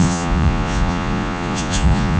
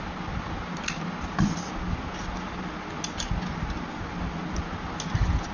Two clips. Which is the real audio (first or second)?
second